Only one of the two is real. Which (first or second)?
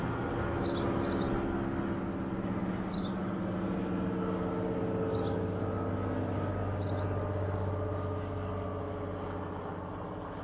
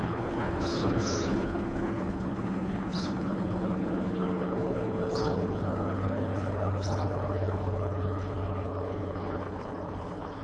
first